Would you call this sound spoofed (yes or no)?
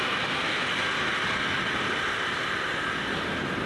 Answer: no